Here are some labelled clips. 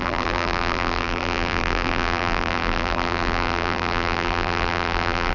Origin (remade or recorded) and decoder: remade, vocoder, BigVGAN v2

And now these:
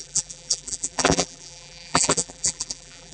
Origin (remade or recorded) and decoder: remade, vocoder, BigVGAN v2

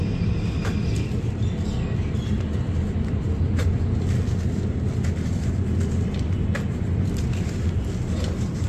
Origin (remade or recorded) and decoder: recorded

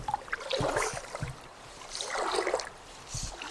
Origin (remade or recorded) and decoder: recorded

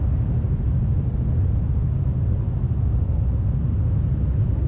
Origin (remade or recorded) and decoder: recorded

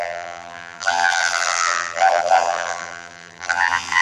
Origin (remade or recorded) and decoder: remade, vocoder, BigVGAN v2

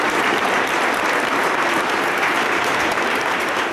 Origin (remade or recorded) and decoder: remade, vocoder, BigVGAN v2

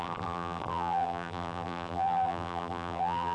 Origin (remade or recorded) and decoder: remade, vocoder, BigVGAN v2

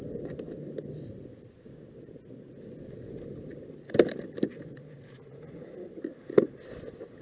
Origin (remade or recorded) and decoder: remade, vocoder, BigVGAN v2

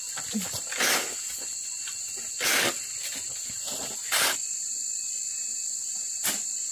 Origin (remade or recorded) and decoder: recorded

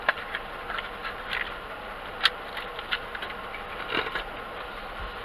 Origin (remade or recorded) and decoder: recorded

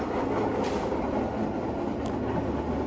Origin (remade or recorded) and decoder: recorded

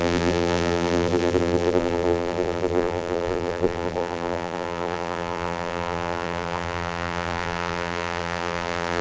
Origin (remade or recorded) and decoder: remade, vocoder, BigVGAN v2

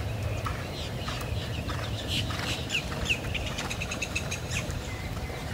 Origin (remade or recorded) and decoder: remade, vocoder, BigVGAN v2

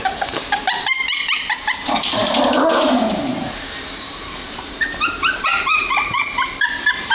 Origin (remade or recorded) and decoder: remade, vocoder, BigVGAN v2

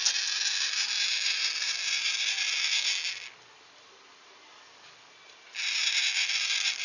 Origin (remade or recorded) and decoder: recorded